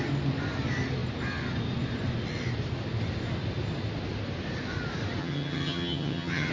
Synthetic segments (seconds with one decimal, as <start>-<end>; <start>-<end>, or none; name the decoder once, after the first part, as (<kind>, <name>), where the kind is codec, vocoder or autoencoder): 5.2-6.5 (vocoder, HiFi-GAN)